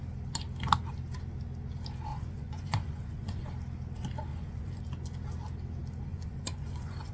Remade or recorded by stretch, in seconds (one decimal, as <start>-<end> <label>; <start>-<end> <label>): 0.0-2.1 recorded; 2.1-3.4 remade; 3.4-4.3 recorded; 4.3-4.8 remade; 4.8-6.1 recorded; 6.1-7.1 remade